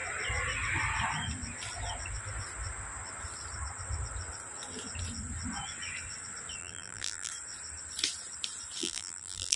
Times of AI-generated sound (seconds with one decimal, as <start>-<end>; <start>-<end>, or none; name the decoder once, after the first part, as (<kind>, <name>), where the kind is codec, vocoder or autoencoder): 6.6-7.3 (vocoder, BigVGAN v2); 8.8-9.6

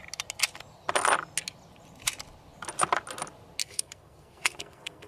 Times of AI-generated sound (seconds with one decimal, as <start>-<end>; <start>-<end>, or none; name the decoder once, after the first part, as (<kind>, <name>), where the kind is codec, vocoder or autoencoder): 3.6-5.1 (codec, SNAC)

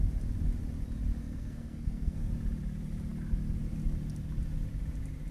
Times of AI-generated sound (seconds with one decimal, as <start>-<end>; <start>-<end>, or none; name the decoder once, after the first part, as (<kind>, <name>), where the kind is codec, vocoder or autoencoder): 1.2-2.3 (codec, SNAC)

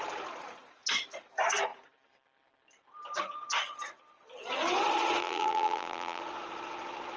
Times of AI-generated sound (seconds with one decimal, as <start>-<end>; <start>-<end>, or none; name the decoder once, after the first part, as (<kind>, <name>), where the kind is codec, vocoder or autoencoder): 5.2-6.2 (vocoder, BigVGAN v2)

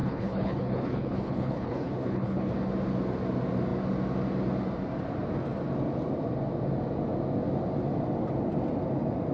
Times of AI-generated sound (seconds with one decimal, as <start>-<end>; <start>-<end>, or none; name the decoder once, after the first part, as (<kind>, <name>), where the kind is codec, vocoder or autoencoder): 0.0-2.5 (codec, HILCodec)

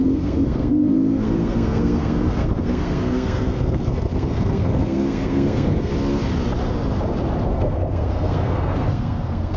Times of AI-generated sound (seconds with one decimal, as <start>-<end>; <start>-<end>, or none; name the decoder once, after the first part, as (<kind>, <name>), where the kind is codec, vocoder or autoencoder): 0.0-5.9 (codec, SNAC); 7.5-9.6

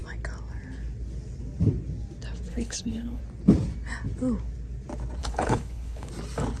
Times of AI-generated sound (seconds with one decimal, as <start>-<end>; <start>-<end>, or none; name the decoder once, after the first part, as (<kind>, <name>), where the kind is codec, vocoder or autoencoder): 2.5-3.2 (codec, HILCodec); 5.2-6.1

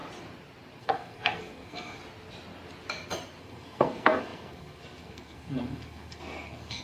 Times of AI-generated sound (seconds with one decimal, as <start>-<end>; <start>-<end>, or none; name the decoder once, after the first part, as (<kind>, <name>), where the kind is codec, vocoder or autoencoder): 0.8-2.0 (codec, SNAC); 3.4-6.8